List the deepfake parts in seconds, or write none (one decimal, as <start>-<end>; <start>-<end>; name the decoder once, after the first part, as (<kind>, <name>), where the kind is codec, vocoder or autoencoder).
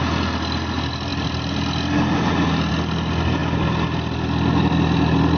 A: none